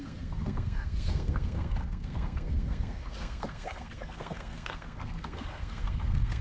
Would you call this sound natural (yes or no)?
no